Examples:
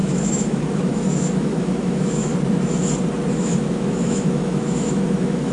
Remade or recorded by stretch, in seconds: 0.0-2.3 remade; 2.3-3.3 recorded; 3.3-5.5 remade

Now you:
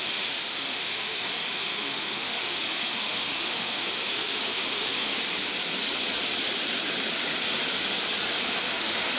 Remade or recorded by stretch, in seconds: 0.0-5.1 remade; 5.1-8.6 recorded; 8.6-9.2 remade

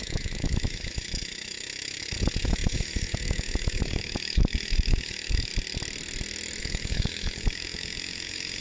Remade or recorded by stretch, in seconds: 0.0-5.5 remade; 5.5-6.6 recorded; 6.6-8.6 remade

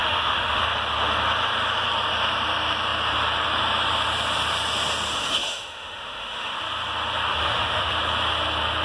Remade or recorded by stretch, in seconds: 0.0-0.6 remade; 0.6-5.1 recorded; 5.1-6.6 remade; 6.6-7.3 recorded; 7.3-7.9 remade; 7.9-8.8 recorded

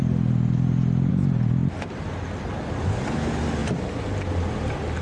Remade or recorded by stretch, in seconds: 0.0-5.0 recorded

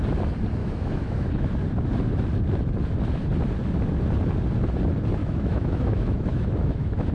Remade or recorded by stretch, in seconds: 0.0-0.6 recorded; 0.6-1.5 remade; 1.5-5.2 recorded; 5.2-7.1 remade